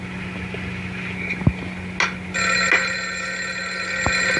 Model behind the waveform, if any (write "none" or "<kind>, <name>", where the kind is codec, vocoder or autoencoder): none